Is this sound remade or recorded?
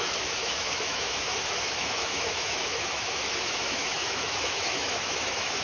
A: remade